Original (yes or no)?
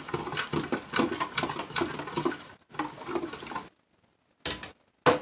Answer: yes